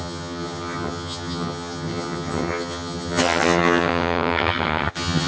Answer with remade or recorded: remade